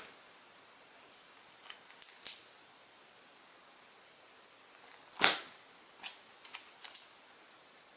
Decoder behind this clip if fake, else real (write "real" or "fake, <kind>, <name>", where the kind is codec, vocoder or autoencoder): real